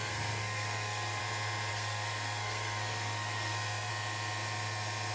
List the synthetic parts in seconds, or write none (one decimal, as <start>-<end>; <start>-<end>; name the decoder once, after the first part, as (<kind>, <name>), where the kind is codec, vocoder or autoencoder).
0.0-1.2 (codec, SNAC); 1.7-3.9